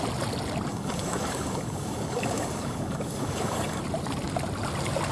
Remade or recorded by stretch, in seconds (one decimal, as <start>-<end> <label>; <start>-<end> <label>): 0.0-0.7 recorded; 0.7-3.8 remade; 3.8-5.1 recorded